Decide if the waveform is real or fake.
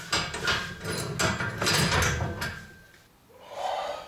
real